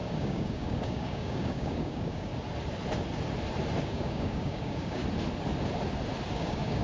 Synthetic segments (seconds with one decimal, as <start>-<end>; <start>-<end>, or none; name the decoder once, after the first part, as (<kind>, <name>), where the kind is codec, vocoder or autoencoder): 0.0-2.3 (codec, DAC); 3.8-5.0; 6.3-6.8